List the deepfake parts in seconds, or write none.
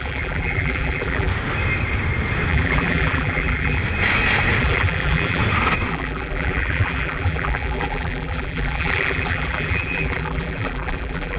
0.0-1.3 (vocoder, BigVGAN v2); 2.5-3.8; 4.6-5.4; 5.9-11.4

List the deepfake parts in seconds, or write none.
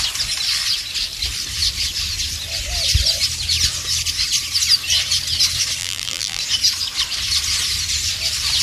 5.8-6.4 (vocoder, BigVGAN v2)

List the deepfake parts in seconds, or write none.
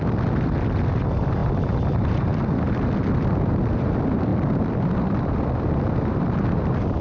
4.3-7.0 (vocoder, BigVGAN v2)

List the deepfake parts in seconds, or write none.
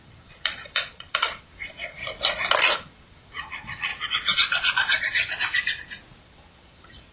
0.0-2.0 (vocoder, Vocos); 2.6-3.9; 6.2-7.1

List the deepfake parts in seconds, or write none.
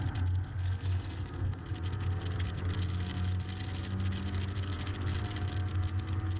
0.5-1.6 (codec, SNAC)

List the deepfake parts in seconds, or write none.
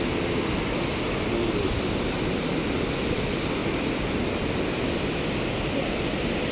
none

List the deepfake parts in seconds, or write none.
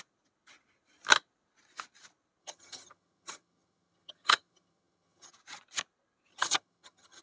2.4-5.3 (vocoder, HiFi-GAN); 6.3-7.2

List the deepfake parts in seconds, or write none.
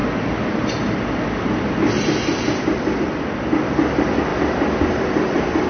0.0-3.3 (vocoder, BigVGAN v2)